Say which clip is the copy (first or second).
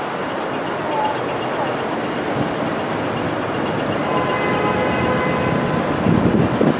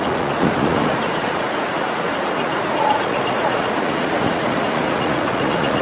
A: second